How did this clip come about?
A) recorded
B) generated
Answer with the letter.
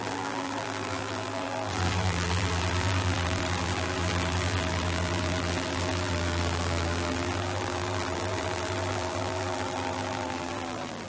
B